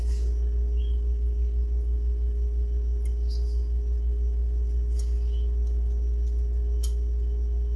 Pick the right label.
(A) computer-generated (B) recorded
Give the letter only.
B